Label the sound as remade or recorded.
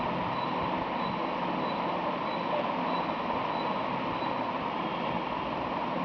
recorded